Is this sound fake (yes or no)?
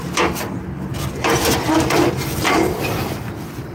no